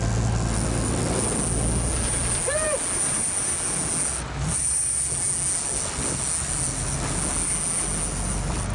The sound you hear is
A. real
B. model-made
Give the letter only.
A